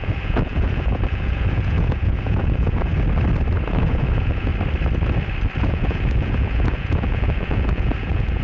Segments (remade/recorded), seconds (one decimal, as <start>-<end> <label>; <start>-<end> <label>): 0.0-2.9 remade; 2.9-3.7 recorded; 3.7-4.5 remade; 4.5-5.6 recorded; 5.6-8.4 remade